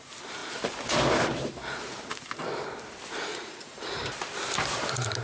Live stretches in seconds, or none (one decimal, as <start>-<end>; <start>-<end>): 0.0-3.3; 4.0-5.2